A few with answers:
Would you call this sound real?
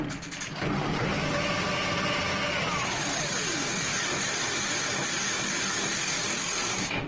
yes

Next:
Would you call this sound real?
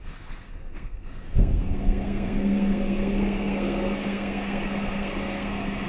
no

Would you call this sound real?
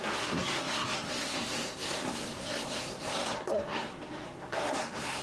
no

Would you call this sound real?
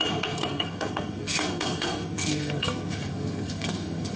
no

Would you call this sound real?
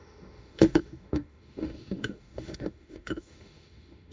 no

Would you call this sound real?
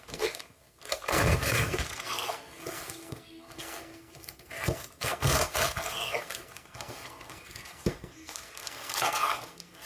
no